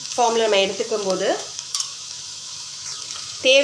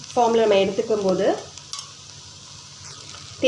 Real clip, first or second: second